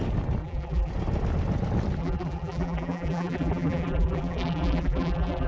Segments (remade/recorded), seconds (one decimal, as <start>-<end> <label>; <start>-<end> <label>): 0.0-0.4 recorded; 0.4-0.9 remade; 0.9-2.0 recorded; 2.0-5.5 remade